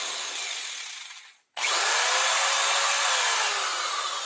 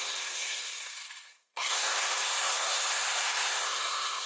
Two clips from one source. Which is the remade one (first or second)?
second